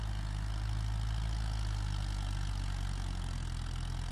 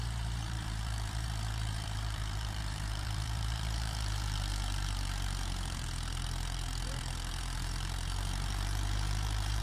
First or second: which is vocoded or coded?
second